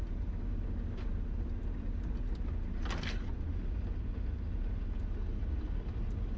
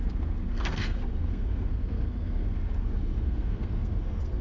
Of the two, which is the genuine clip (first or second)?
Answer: first